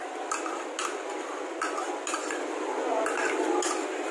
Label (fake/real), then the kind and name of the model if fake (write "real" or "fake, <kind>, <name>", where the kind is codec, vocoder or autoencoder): real